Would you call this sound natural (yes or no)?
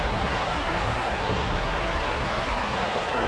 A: no